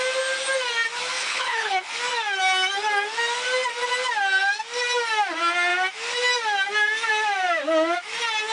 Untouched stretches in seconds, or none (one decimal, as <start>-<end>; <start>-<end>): 0.0-1.2; 1.9-8.5